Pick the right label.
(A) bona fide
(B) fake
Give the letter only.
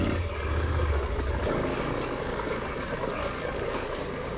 B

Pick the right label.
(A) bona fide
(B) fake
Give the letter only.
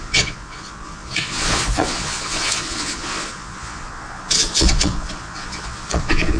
B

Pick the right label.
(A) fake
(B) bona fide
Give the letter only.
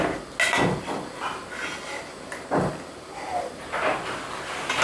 B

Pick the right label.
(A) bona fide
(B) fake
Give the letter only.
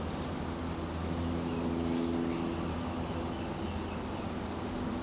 A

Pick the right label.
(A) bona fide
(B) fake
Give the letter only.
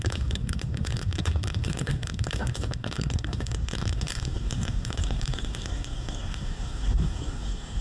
B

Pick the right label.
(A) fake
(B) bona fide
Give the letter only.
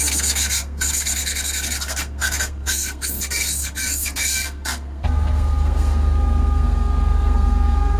A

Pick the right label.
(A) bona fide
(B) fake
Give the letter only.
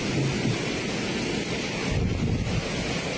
A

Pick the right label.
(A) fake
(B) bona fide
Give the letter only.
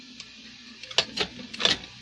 B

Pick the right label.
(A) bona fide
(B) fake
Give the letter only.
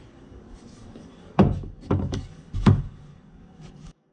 B